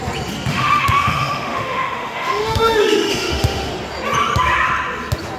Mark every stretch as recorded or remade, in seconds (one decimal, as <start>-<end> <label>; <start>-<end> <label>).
0.0-0.5 recorded; 0.5-3.7 remade; 3.7-5.4 recorded